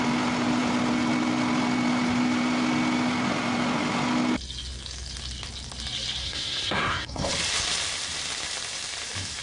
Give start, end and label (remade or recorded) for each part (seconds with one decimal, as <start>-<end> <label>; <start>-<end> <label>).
0.0-6.2 recorded; 6.2-7.3 remade; 7.3-9.4 recorded